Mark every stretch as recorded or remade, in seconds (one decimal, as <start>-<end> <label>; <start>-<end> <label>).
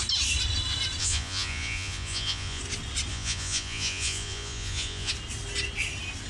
0.0-1.0 recorded; 1.0-2.6 remade; 2.6-3.1 recorded; 3.1-5.1 remade; 5.1-6.3 recorded